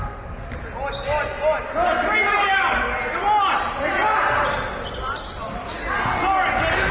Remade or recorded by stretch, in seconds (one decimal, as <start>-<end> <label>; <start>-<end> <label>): 0.0-6.9 recorded